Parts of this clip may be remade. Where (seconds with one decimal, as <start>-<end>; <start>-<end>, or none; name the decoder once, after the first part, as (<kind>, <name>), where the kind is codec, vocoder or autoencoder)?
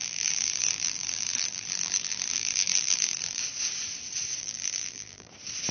0.0-3.4 (vocoder, BigVGAN v2); 4.4-5.3